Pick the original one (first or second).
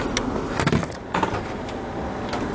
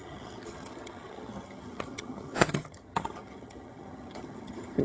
first